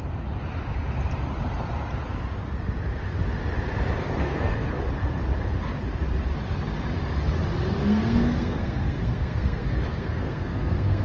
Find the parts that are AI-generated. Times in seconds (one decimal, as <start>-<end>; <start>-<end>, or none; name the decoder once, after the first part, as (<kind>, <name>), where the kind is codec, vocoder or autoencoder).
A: 4.2-4.8 (codec, SNAC); 7.8-11.0